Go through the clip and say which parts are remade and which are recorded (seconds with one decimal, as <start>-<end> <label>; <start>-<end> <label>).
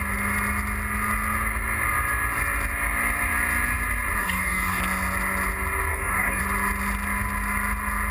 0.0-4.2 recorded; 4.2-4.8 remade; 4.8-5.9 recorded; 5.9-6.4 remade; 6.4-8.1 recorded